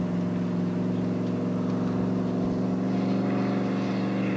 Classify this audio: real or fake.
real